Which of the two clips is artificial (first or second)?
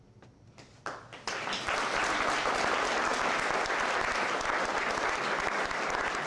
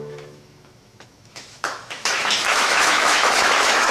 second